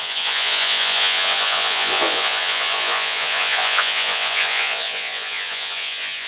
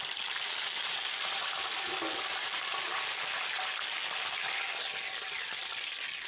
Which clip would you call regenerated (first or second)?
first